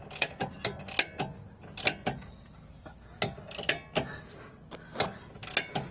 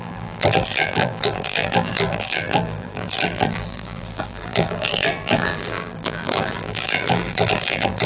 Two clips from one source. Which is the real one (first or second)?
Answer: first